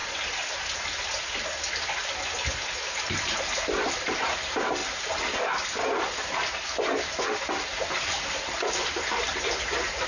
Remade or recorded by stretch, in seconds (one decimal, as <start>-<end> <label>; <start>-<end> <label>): 0.0-3.0 recorded; 3.0-4.8 remade; 4.8-8.7 recorded; 8.7-10.1 remade